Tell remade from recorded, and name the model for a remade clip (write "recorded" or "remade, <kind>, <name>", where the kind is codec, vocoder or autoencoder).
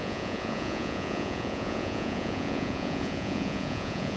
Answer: remade, vocoder, Vocos